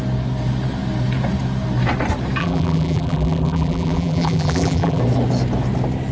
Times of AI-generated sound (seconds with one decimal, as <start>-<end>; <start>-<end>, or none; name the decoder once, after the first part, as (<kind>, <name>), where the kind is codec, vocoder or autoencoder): 2.4-5.0 (vocoder, BigVGAN v2)

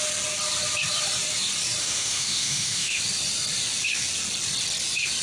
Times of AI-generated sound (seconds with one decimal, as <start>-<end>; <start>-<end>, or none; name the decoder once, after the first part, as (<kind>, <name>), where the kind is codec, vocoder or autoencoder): 1.8-3.0 (autoencoder, DAC-VAE)